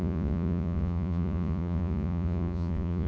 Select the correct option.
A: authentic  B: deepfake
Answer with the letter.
B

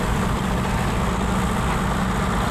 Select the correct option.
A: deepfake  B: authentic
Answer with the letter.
B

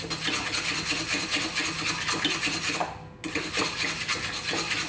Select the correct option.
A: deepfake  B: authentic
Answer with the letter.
B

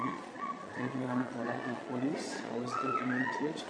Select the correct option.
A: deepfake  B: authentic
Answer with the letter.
A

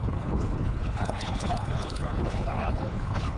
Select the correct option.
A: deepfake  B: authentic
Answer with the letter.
A